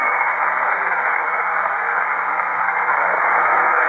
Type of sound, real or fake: fake